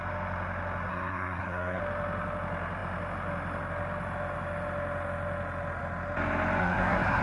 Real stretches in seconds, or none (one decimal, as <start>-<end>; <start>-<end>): 0.0-0.9; 1.8-6.6